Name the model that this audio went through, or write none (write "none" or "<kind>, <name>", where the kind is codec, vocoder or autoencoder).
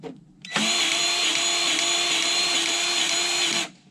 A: vocoder, BigVGAN v2